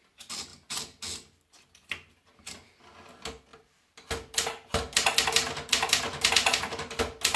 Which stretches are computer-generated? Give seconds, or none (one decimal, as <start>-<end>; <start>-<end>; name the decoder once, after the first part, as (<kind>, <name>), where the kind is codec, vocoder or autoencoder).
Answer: 0.5-1.5 (vocoder, BigVGAN v2); 3.5-6.3